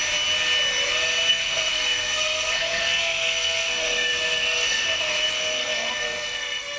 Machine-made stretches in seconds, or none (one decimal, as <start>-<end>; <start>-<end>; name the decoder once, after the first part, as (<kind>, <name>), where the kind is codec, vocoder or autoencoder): 1.3-6.8 (codec, SNAC)